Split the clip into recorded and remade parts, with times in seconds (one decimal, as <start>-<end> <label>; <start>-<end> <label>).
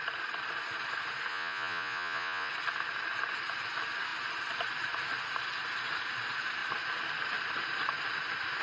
0.0-1.3 recorded; 1.3-2.5 remade; 2.5-8.6 recorded